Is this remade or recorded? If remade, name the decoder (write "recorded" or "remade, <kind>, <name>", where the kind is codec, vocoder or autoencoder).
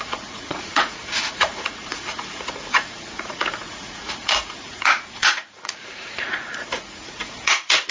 remade, vocoder, Vocos